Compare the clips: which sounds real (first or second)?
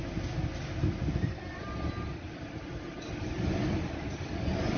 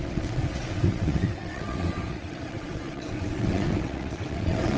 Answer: first